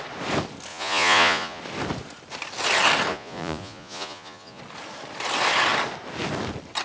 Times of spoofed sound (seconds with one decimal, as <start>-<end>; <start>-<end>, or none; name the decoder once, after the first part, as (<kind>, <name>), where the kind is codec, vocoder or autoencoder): 0.7-1.6 (vocoder, Vocos); 3.1-4.6